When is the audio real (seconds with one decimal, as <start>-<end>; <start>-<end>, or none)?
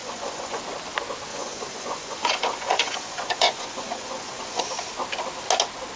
0.6-1.3; 4.6-6.0